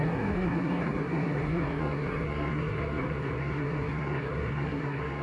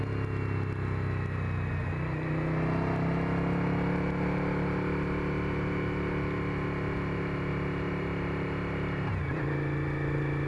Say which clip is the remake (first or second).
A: first